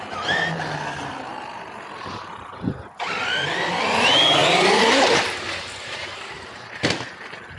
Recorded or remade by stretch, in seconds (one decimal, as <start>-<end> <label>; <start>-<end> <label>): 0.0-4.4 recorded; 4.4-6.9 remade; 6.9-7.6 recorded